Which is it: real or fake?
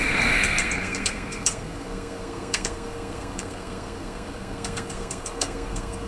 fake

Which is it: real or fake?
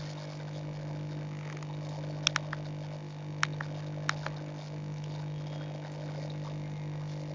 real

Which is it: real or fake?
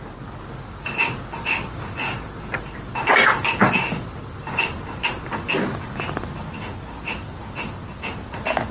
real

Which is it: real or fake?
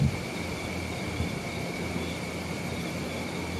real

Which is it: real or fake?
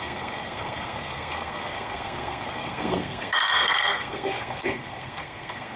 fake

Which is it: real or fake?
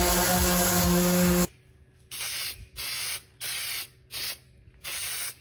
real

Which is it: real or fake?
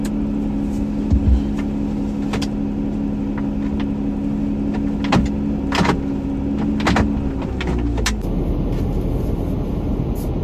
real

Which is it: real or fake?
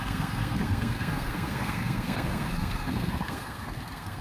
fake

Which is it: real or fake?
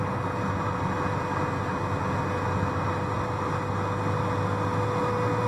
real